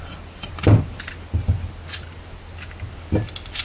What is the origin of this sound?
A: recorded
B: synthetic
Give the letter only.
A